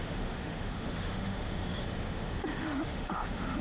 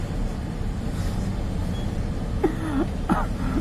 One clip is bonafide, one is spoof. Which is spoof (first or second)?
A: first